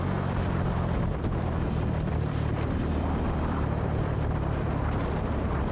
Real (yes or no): no